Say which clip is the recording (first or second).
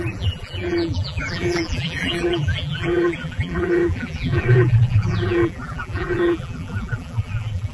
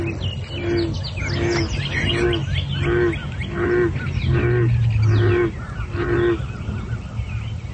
second